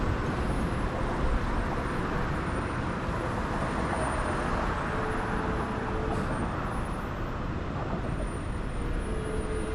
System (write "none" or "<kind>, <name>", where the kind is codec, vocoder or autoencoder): none